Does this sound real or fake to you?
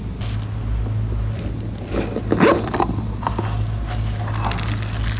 real